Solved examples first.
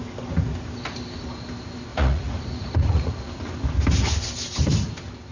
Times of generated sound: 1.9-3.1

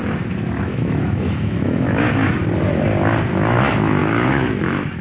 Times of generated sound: 0.6-2.4; 3.3-5.0